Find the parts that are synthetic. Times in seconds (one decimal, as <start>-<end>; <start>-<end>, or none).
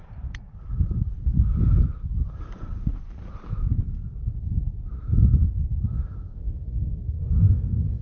6.3-8.0